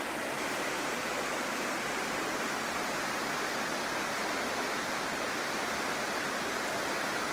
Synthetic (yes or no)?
no